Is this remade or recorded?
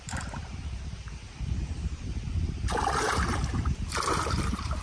remade